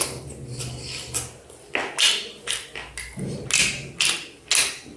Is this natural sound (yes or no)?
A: yes